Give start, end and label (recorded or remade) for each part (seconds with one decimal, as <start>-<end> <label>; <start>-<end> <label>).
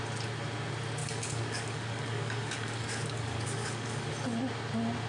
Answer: 0.0-1.0 recorded; 1.0-4.1 remade; 4.1-5.1 recorded